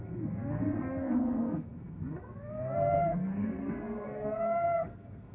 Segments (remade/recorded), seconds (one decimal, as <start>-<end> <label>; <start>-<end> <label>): 0.0-5.3 remade